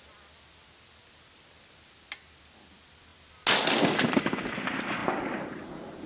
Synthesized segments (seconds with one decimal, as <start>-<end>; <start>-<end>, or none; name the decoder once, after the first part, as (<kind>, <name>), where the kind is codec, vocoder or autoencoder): none